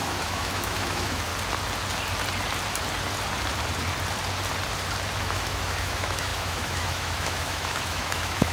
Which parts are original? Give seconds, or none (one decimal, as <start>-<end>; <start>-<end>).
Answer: 1.3-5.2